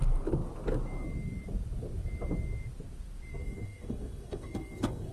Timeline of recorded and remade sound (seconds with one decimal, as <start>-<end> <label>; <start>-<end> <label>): 0.0-3.3 recorded; 3.3-5.1 remade